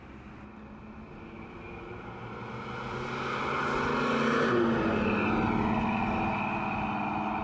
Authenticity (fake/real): real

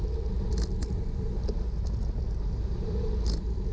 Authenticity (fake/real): real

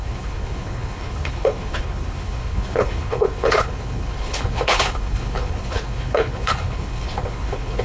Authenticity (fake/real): fake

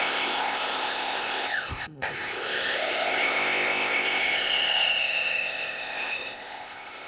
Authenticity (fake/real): fake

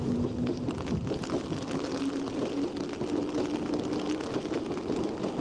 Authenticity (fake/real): real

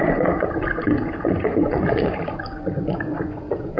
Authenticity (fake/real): fake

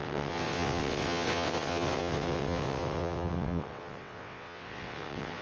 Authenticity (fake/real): fake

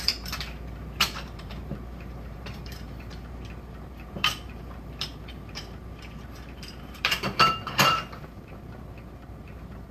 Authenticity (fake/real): fake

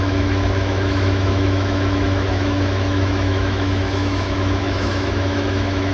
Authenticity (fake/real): fake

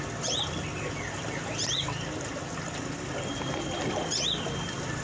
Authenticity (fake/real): real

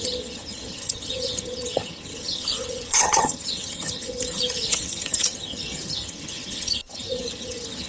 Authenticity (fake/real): fake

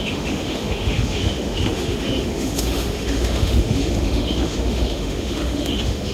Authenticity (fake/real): fake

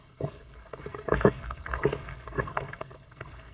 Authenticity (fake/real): fake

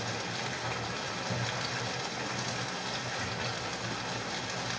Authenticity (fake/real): real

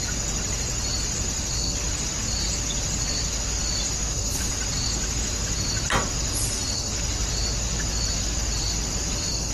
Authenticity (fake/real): real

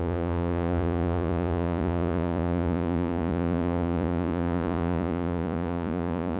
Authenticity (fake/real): fake